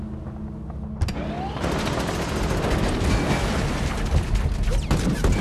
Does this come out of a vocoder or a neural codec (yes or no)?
no